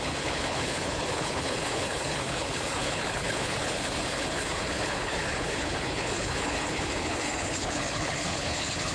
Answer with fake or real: fake